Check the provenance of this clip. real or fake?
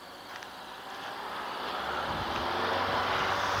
real